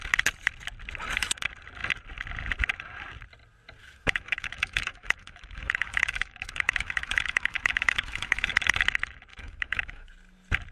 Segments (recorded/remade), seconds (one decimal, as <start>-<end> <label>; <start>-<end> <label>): 0.0-3.8 recorded; 3.8-8.5 remade; 8.5-9.3 recorded; 9.3-10.1 remade; 10.1-10.7 recorded